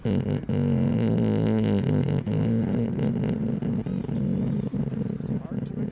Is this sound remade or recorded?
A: recorded